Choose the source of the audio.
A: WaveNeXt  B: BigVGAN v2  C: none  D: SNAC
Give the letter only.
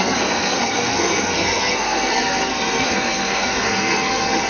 D